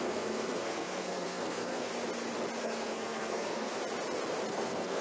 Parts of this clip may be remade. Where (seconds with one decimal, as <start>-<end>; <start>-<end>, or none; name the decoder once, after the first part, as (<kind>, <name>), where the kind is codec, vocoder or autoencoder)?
0.0-1.9 (codec, SNAC); 2.6-3.7; 4.5-5.0